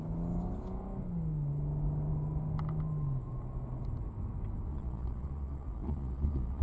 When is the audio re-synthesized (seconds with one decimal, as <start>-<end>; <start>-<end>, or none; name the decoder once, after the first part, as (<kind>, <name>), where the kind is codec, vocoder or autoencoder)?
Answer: 4.7-6.6 (vocoder, Vocos)